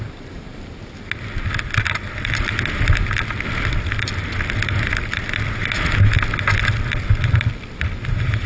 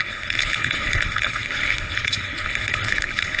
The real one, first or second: first